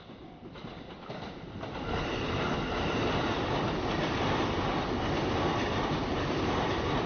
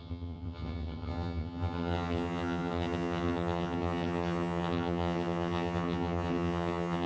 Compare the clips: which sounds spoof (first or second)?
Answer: second